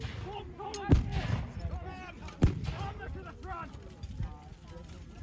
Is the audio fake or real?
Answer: real